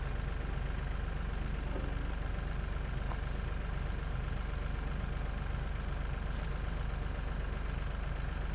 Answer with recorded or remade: recorded